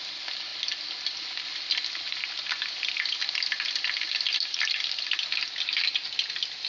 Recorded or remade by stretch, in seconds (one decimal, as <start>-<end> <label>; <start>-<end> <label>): 0.0-6.7 recorded